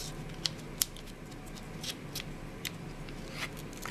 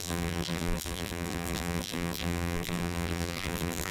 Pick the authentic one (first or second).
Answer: first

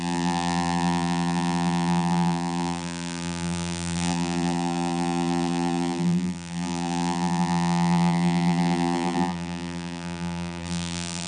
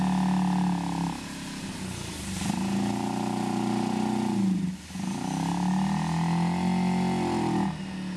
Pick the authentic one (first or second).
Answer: second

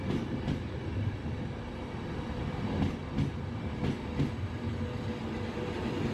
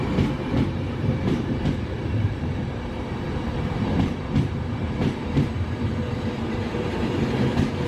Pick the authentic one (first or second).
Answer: first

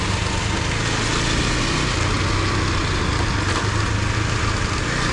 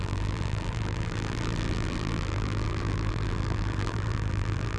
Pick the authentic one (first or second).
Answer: first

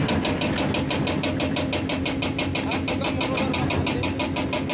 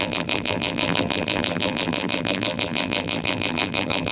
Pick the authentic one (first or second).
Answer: first